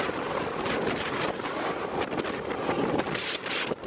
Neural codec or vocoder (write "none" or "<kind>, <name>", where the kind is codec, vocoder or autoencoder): none